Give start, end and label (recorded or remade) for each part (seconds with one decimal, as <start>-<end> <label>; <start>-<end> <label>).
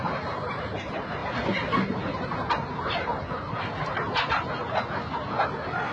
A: 0.0-5.9 recorded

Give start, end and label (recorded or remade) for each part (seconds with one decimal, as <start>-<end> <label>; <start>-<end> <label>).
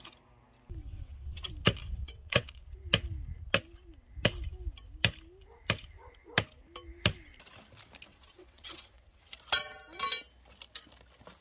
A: 0.0-0.8 recorded; 0.8-1.5 remade; 1.5-2.0 recorded; 2.0-2.6 remade; 2.6-8.1 recorded; 8.1-9.2 remade; 9.2-11.4 recorded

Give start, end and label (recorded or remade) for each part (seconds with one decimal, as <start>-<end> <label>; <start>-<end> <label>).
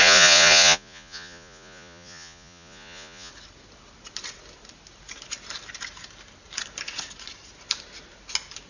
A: 0.0-3.3 remade; 3.3-8.7 recorded